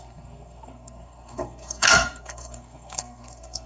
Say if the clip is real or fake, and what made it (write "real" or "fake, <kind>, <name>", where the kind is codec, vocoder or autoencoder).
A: fake, codec, SNAC